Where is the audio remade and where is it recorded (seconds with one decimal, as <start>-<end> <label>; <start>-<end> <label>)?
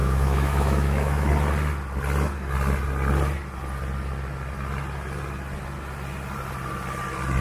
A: 0.0-1.3 remade; 1.3-7.4 recorded